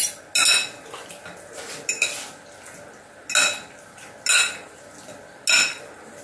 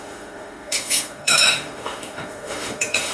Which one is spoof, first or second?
second